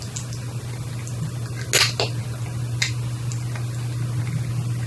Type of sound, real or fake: real